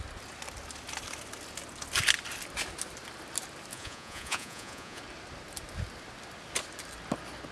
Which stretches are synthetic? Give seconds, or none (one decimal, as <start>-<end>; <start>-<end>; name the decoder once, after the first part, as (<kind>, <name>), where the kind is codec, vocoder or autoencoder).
3.7-5.0 (vocoder, Vocos)